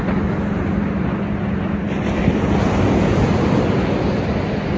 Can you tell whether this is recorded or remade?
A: recorded